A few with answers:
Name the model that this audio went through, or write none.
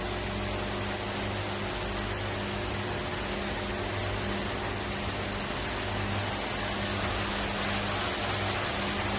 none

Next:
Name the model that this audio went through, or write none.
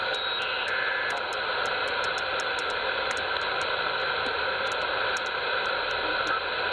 none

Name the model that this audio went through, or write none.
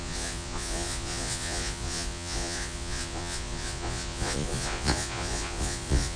vocoder, Vocos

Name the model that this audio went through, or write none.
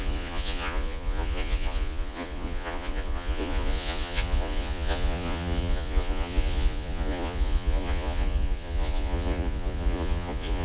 vocoder, Vocos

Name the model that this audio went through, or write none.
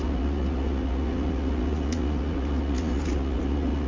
vocoder, Vocos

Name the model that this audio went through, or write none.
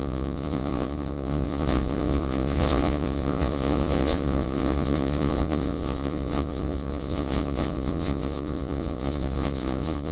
vocoder, Vocos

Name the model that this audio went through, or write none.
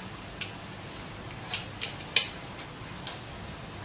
none